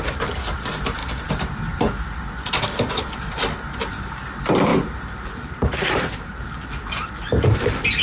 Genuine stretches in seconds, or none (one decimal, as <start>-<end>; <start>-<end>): 0.0-4.7; 6.4-8.0